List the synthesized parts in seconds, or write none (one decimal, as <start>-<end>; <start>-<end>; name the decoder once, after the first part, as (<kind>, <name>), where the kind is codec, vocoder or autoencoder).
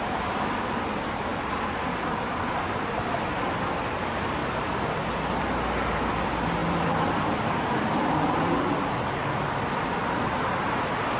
1.3-3.3 (vocoder, BigVGAN v2); 4.4-5.1; 6.6-9.0